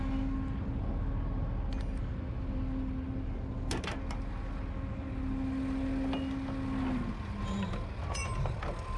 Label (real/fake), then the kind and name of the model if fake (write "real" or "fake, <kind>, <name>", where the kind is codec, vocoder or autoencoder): real